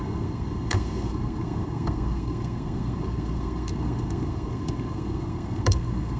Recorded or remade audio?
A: remade